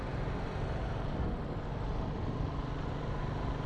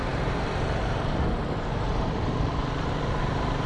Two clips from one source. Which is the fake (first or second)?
second